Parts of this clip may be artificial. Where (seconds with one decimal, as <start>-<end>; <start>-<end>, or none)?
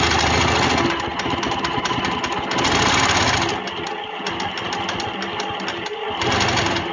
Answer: none